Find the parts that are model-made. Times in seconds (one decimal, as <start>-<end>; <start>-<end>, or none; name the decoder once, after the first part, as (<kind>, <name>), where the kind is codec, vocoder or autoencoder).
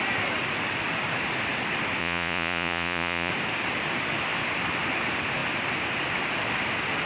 2.0-3.3 (vocoder, Vocos)